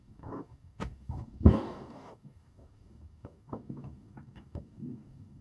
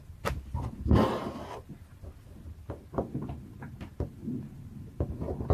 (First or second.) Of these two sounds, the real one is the second